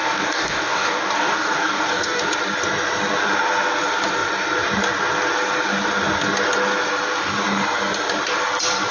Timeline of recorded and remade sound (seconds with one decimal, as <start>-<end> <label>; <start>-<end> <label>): 0.0-2.2 remade; 2.2-8.9 recorded